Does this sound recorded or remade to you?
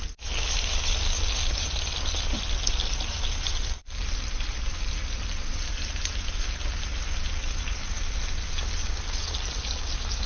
recorded